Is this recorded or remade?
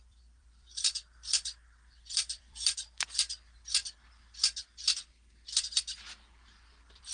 remade